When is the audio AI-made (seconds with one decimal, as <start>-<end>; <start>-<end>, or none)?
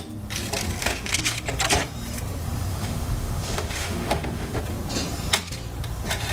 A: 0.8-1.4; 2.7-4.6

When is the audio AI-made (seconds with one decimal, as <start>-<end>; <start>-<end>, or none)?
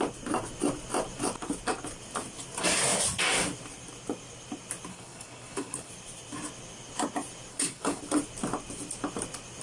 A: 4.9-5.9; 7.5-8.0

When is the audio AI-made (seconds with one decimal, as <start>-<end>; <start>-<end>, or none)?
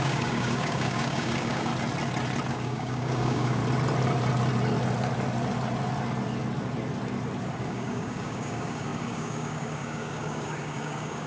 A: 0.0-1.7; 2.5-3.6; 7.6-11.3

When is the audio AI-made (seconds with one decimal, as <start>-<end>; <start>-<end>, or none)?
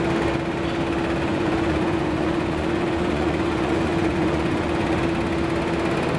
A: 1.3-5.0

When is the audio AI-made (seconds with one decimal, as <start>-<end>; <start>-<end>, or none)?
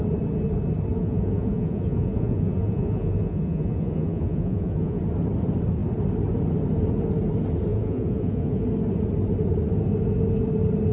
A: 0.9-5.0; 7.7-8.6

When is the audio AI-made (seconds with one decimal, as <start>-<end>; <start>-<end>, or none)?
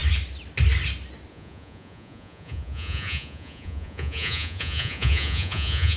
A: 1.3-6.0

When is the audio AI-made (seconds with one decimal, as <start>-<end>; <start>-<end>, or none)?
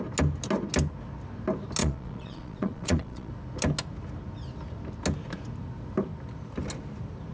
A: 1.8-3.3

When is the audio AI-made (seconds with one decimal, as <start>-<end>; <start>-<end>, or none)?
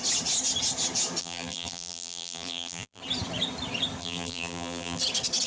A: 1.2-3.0; 4.0-5.0